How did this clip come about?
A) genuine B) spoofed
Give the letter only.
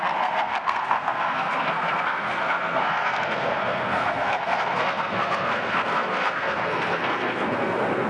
B